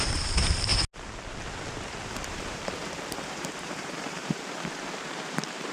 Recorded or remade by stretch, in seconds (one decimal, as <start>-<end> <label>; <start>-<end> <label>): 0.0-0.7 remade; 0.7-2.0 recorded; 2.0-5.7 remade

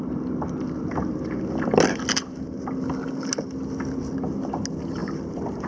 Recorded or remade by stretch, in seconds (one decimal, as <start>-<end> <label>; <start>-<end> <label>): 0.0-5.0 recorded; 5.0-5.7 remade

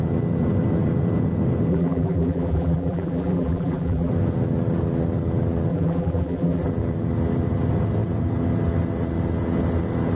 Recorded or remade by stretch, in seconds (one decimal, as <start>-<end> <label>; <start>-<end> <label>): 0.0-1.7 recorded; 1.7-4.1 remade; 4.1-5.7 recorded; 5.7-6.7 remade; 6.7-10.2 recorded